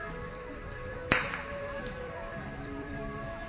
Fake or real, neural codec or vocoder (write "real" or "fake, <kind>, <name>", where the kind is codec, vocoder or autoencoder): fake, vocoder, BigVGAN v2